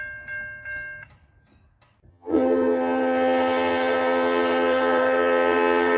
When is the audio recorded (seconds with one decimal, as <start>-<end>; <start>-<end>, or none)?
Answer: 0.0-2.1